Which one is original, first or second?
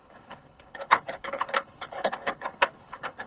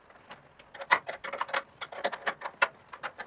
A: second